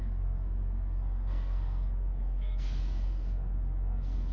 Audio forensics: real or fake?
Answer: fake